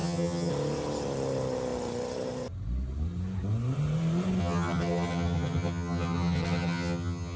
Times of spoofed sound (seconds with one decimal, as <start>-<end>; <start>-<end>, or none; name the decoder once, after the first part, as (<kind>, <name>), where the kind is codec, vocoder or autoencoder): 0.0-0.5 (vocoder, HiFi-GAN); 4.4-7.4